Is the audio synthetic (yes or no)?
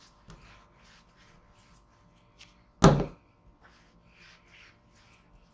no